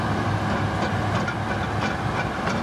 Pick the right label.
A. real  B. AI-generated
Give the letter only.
A